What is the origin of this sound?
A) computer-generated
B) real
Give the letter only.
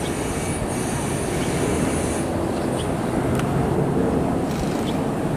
B